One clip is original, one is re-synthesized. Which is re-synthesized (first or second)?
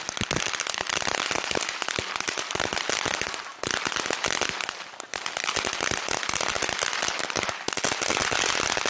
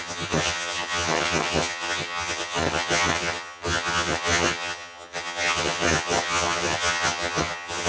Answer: second